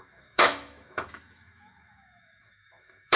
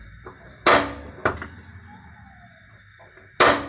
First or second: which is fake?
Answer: first